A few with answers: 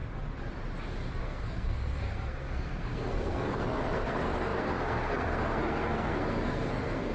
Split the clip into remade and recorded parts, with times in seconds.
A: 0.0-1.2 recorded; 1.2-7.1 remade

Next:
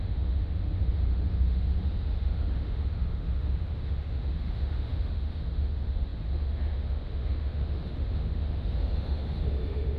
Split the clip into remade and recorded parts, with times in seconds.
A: 0.0-10.0 remade

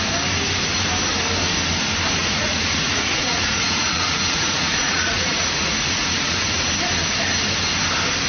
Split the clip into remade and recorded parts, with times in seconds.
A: 0.0-2.2 recorded; 2.2-6.7 remade; 6.7-8.3 recorded